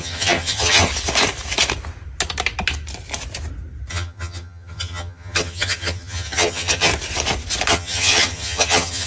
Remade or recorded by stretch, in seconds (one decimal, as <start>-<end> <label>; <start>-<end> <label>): 0.0-0.9 remade; 0.9-3.9 recorded; 3.9-6.9 remade; 6.9-7.7 recorded; 7.7-9.1 remade